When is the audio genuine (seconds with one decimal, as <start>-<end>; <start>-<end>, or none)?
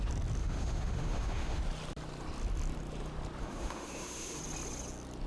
0.0-0.4; 1.6-3.4; 4.4-5.3